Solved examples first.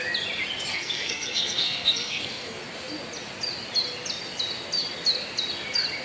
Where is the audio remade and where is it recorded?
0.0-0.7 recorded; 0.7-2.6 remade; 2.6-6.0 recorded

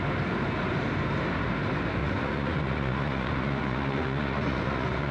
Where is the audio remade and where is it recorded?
0.0-2.0 recorded; 2.0-5.1 remade

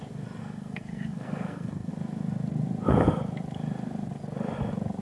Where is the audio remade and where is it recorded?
0.0-0.4 recorded; 0.4-1.9 remade; 1.9-5.0 recorded

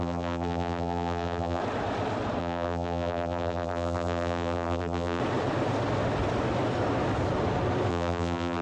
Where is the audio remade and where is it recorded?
0.0-1.6 remade; 1.6-2.4 recorded; 2.4-5.2 remade; 5.2-7.9 recorded; 7.9-8.6 remade